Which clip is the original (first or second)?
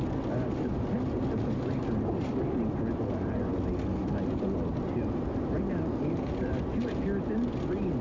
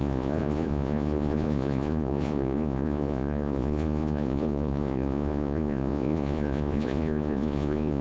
first